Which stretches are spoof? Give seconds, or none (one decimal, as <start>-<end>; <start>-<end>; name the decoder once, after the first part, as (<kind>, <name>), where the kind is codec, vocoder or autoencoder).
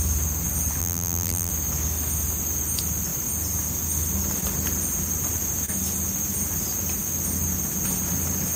0.8-1.5 (vocoder, BigVGAN v2)